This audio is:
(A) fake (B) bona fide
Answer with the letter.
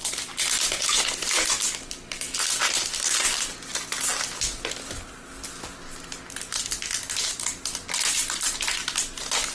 B